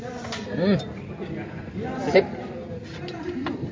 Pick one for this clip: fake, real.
real